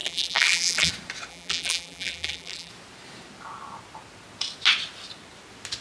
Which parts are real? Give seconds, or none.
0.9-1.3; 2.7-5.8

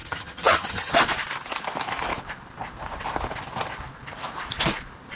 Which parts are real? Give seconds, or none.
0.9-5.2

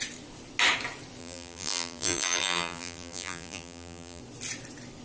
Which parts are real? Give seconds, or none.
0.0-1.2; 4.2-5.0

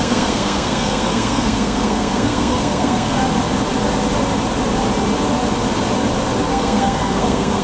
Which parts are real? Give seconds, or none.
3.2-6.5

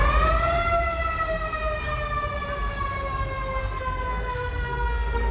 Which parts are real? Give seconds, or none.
0.0-3.6

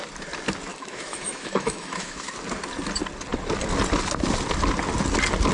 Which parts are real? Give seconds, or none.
0.0-0.7; 2.3-5.5